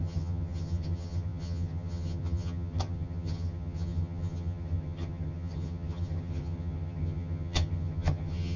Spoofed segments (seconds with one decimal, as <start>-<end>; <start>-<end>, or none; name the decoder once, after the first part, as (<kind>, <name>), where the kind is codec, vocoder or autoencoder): 0.0-8.6 (vocoder, HiFi-GAN)